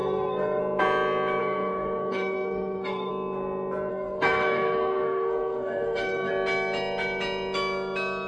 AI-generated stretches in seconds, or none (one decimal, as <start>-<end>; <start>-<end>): 0.0-0.6; 1.4-3.1; 3.9-6.3